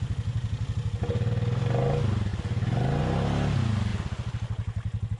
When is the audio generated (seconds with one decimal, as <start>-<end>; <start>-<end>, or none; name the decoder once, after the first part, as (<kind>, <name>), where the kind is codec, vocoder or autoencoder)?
none